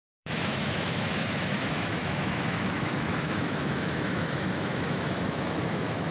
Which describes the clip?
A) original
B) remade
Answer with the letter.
B